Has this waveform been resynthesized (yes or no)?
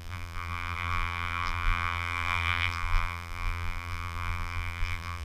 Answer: yes